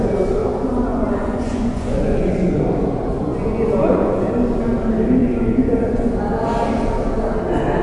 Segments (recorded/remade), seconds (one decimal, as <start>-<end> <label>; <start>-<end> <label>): 0.0-0.9 recorded; 0.9-2.6 remade; 2.6-3.3 recorded; 3.3-4.2 remade; 4.2-5.2 recorded; 5.2-6.1 remade; 6.1-7.8 recorded